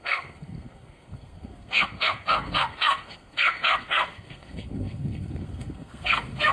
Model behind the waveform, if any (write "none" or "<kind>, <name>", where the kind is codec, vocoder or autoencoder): codec, SNAC